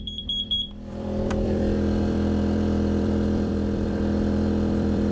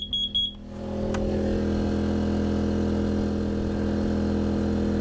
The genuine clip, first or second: second